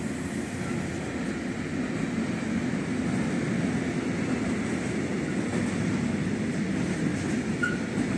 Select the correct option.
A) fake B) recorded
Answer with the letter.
B